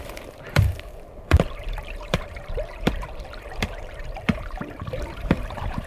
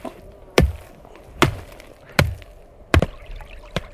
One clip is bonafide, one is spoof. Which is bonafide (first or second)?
second